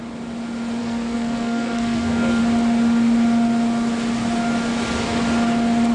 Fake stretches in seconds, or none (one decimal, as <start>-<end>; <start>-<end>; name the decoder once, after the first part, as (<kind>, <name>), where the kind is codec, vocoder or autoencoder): 0.8-2.4 (codec, SNAC)